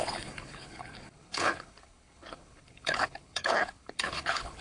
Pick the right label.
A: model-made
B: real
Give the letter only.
A